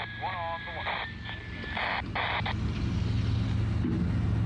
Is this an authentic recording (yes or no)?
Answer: yes